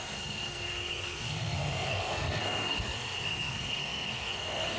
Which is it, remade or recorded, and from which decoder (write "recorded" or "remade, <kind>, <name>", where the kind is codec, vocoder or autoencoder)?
remade, codec, SNAC